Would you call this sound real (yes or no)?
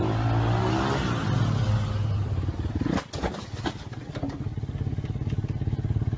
yes